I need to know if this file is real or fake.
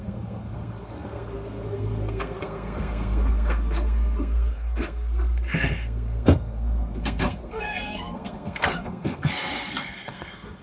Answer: fake